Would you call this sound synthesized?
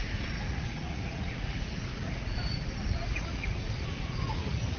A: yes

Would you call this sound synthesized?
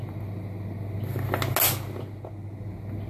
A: no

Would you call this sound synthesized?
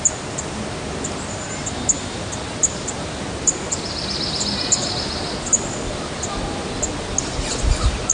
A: no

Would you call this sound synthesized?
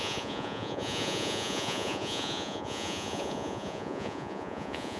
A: yes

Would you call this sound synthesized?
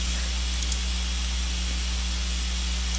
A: no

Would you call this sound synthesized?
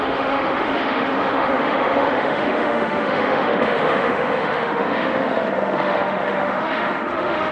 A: yes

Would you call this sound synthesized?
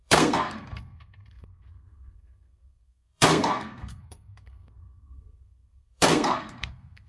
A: yes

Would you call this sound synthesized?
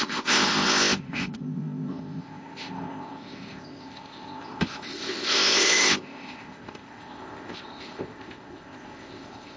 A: yes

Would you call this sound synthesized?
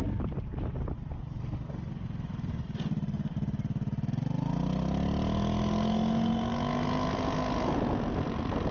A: no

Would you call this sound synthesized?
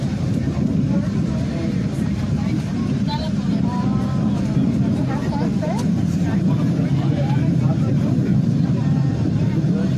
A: yes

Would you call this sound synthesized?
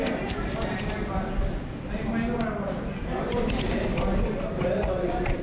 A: no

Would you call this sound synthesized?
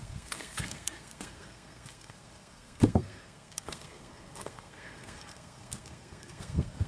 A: yes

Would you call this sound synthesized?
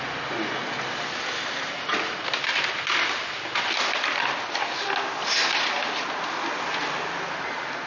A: no